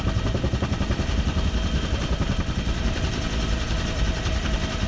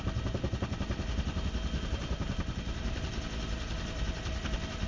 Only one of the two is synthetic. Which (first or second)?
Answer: first